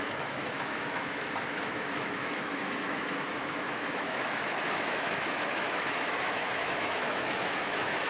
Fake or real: fake